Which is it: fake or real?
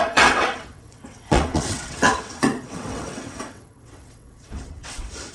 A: fake